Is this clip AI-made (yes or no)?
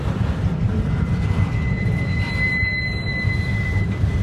yes